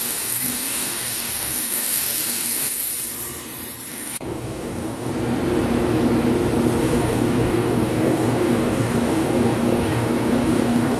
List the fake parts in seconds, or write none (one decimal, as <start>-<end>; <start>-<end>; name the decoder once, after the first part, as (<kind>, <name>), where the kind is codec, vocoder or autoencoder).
0.0-2.9 (codec, DAC); 3.9-5.1; 6.8-11.0